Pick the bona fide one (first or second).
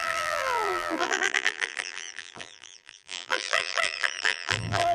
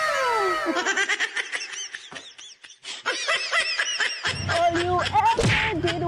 second